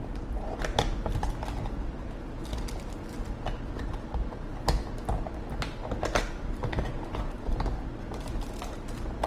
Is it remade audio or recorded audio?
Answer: recorded